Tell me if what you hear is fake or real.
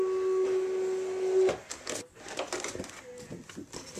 real